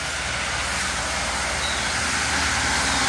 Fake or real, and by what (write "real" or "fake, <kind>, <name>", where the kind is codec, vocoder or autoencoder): real